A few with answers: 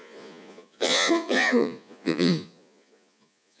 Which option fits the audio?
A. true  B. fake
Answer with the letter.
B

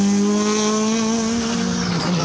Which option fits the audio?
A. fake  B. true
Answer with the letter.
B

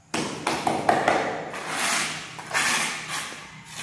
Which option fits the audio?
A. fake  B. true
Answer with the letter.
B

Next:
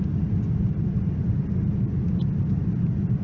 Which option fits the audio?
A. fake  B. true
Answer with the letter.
B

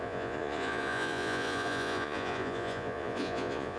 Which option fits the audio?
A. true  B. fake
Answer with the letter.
B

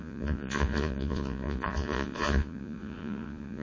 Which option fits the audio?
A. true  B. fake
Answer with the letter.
B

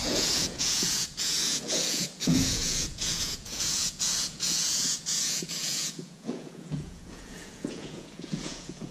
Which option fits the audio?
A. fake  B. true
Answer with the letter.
A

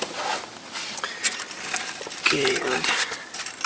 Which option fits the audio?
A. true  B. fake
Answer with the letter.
A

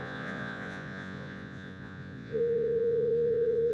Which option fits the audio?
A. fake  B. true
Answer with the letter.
A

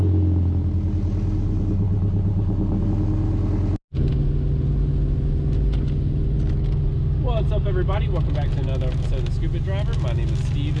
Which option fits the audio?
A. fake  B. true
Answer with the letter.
B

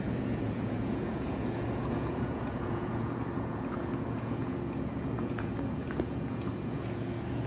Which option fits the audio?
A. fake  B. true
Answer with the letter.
A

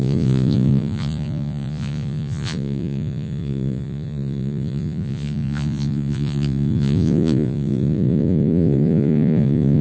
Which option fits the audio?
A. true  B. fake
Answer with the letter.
B